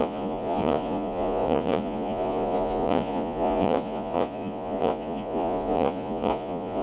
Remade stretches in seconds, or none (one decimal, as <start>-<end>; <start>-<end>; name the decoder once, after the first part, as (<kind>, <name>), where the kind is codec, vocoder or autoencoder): 0.0-6.8 (vocoder, Vocos)